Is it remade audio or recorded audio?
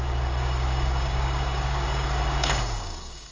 remade